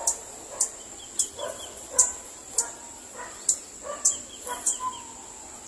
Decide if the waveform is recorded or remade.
recorded